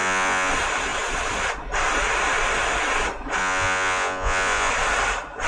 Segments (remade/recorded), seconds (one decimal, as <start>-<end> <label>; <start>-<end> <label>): 0.0-0.5 remade; 0.5-3.4 recorded; 3.4-4.7 remade; 4.7-5.5 recorded